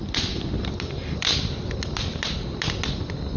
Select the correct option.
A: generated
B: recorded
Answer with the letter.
B